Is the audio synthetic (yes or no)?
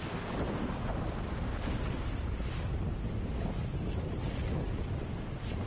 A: no